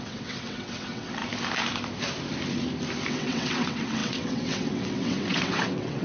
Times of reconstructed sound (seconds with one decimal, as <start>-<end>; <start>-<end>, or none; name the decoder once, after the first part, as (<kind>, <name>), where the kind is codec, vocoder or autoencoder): 0.0-1.2 (vocoder, WaveNeXt); 3.1-6.0